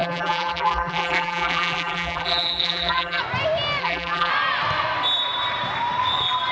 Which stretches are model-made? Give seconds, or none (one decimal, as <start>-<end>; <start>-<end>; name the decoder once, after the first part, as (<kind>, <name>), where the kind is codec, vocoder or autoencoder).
0.0-3.2 (vocoder, BigVGAN v2); 3.8-4.3